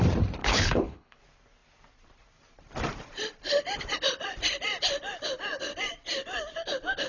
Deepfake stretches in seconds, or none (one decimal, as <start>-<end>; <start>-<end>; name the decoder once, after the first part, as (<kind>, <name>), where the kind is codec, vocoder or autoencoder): 0.4-1.2 (codec, HILCodec)

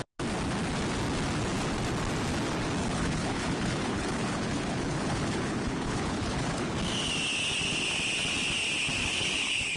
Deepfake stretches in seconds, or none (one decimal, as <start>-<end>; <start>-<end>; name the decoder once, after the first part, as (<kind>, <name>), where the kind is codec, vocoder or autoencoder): 2.8-6.7 (codec, HILCodec); 9.0-9.8

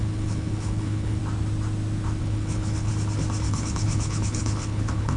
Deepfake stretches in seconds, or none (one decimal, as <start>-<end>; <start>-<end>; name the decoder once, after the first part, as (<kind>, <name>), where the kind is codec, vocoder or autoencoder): 0.0-1.2 (codec, HILCodec); 2.2-2.9; 3.5-5.2

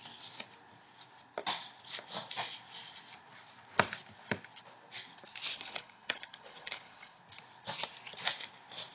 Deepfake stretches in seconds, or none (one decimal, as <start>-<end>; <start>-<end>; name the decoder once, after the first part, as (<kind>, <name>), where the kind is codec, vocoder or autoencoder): 5.5-7.2 (codec, HILCodec)